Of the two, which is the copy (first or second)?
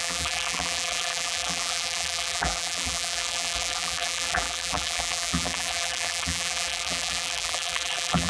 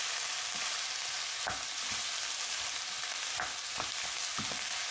first